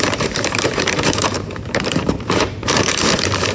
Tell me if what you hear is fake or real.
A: fake